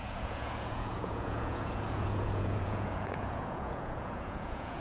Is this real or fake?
fake